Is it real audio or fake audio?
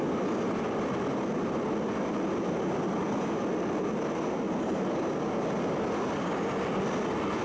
real